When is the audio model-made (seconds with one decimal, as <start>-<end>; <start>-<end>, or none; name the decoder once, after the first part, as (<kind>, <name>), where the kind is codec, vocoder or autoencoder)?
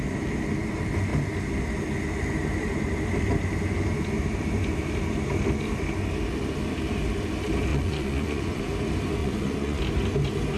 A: 7.7-8.6 (vocoder, Vocos); 9.2-9.8